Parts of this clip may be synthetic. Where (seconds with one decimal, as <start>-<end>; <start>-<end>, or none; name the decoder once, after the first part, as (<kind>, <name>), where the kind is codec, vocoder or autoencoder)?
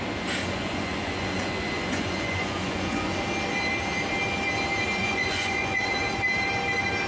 0.4-3.2 (vocoder, Vocos); 5.0-5.9